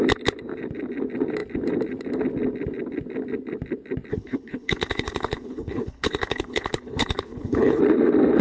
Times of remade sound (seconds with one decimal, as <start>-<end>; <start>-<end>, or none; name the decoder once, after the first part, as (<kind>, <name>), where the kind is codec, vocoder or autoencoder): 4.1-7.8 (codec, HILCodec)